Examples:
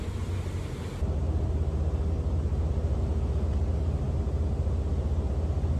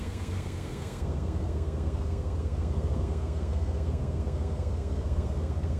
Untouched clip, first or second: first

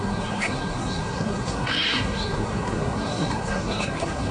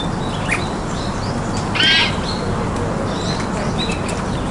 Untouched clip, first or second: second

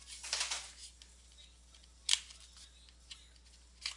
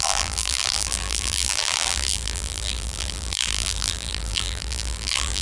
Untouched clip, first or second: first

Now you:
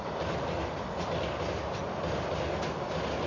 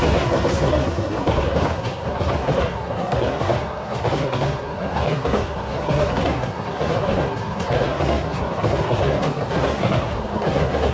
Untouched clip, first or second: first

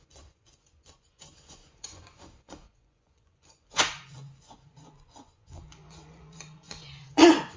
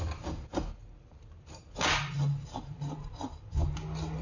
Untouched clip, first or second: second